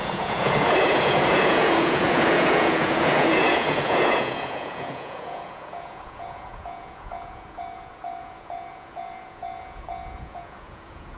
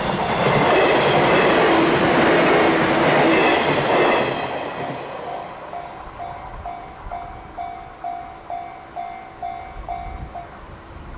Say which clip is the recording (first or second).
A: second